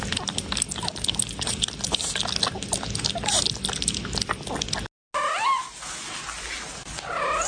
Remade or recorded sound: recorded